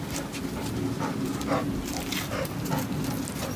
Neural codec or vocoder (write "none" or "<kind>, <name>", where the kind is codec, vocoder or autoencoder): none